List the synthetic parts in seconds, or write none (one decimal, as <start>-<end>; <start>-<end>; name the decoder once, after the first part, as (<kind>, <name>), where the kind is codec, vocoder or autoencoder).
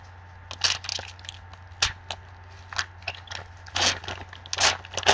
none